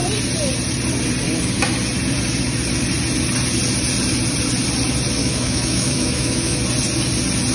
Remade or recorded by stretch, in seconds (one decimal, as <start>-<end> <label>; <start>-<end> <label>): 0.0-5.2 recorded; 5.2-6.6 remade; 6.6-7.5 recorded